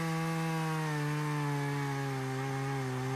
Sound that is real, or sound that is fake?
real